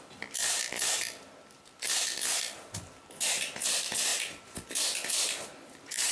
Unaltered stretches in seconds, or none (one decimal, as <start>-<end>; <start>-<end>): 0.0-6.1